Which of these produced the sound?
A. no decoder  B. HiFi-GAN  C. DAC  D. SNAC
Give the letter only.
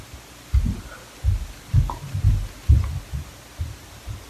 A